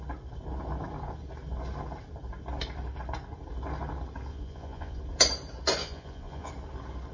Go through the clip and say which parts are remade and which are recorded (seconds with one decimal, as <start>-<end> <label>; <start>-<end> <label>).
0.0-4.3 recorded; 4.3-5.0 remade; 5.0-5.8 recorded; 5.8-6.5 remade; 6.5-7.1 recorded